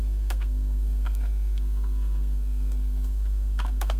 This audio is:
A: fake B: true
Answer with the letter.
A